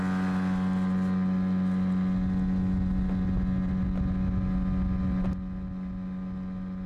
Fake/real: real